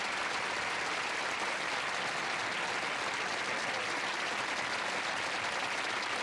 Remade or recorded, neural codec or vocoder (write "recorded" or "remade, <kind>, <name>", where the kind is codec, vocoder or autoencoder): recorded